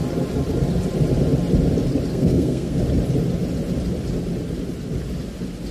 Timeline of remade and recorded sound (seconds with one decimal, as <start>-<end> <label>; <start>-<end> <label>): 0.0-2.1 recorded; 2.1-2.8 remade; 2.8-5.7 recorded